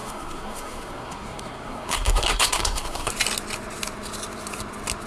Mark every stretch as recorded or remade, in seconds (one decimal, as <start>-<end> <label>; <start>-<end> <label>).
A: 0.0-3.1 remade; 3.1-5.1 recorded